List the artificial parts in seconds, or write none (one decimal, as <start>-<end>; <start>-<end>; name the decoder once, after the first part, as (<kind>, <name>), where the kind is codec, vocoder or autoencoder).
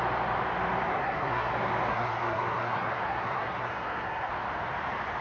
0.9-1.5 (codec, SNAC); 1.9-4.3